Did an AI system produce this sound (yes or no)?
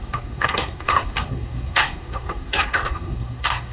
yes